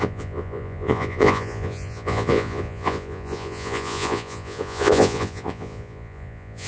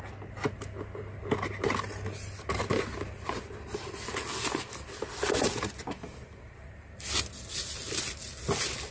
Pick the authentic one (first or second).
second